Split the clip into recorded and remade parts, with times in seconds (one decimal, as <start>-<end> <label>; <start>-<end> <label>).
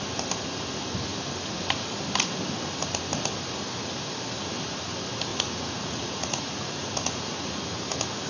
0.0-5.3 recorded; 5.3-7.6 remade; 7.6-8.3 recorded